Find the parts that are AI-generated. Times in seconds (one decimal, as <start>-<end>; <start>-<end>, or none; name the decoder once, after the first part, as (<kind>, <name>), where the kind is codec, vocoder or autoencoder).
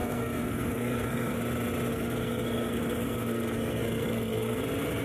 0.0-1.4 (codec, SNAC); 1.9-4.6